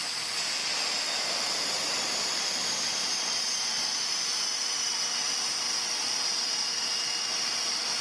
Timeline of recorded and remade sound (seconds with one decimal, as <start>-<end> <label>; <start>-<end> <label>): 0.0-8.0 recorded